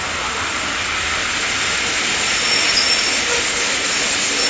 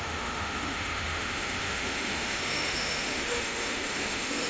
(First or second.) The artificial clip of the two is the second